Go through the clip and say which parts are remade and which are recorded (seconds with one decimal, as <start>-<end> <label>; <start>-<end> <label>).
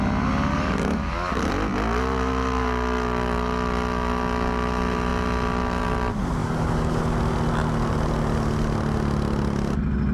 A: 0.0-0.5 recorded; 0.5-1.5 remade; 1.5-6.4 recorded; 6.4-7.0 remade; 7.0-10.1 recorded